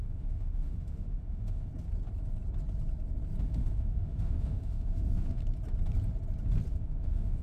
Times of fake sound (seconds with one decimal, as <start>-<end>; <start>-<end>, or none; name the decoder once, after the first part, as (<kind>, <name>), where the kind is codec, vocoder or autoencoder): 0.0-1.7 (autoencoder, DAC-VAE); 3.4-5.4; 6.7-7.4

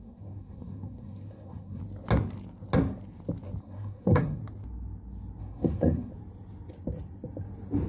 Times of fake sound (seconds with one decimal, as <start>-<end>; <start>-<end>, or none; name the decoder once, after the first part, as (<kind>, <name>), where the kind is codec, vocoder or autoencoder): 0.0-1.8 (codec, SNAC); 3.6-4.4; 5.4-6.1

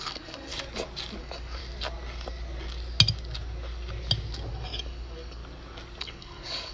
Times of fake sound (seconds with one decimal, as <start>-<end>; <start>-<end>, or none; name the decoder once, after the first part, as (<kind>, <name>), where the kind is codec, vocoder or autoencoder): 0.0-0.5 (codec, DAC); 1.2-1.6; 4.5-5.4; 6.0-6.7

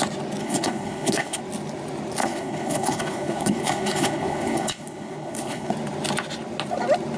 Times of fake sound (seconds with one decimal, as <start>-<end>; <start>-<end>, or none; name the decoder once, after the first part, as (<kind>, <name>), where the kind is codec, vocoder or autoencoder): 0.4-1.4 (codec, HILCodec); 2.2-5.7

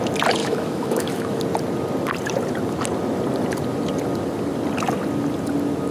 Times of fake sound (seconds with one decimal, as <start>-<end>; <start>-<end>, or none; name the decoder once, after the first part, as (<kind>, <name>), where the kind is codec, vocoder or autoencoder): 0.4-1.4 (autoencoder, DAC-VAE)

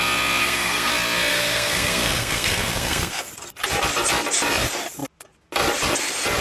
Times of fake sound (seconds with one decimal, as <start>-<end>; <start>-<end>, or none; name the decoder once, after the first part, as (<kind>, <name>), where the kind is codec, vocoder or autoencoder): 0.4-0.9 (codec, SNAC); 1.3-3.3

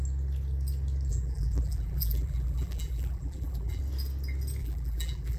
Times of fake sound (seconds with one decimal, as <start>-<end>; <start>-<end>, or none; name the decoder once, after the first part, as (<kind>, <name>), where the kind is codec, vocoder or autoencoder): 1.1-3.8 (vocoder, BigVGAN v2); 4.6-5.4